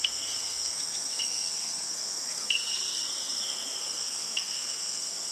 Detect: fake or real fake